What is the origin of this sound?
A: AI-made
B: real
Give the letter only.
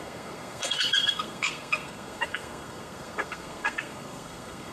A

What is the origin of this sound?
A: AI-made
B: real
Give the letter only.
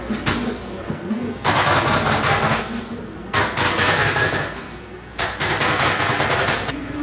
A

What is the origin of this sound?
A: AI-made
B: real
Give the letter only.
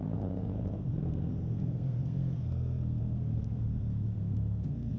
A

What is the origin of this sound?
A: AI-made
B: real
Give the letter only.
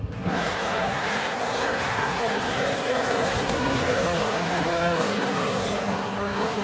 A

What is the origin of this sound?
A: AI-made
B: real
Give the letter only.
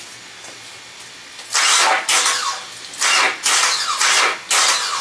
B